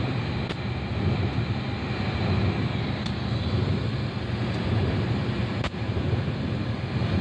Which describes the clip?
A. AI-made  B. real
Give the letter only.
B